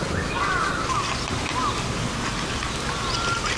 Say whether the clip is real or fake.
real